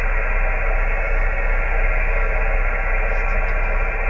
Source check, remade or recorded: recorded